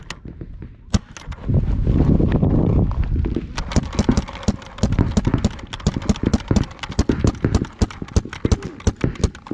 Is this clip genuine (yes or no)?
yes